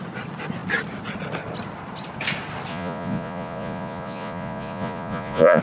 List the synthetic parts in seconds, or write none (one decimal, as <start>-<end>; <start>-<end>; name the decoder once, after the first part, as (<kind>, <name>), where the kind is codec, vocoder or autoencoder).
2.7-5.6 (vocoder, Vocos)